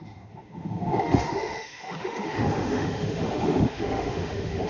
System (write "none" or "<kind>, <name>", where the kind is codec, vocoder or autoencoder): autoencoder, DAC-VAE